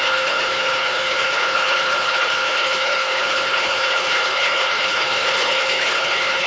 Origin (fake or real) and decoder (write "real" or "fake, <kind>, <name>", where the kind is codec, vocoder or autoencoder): fake, codec, HILCodec